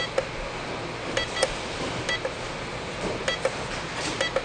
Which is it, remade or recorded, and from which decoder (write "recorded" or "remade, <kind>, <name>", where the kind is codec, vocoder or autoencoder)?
recorded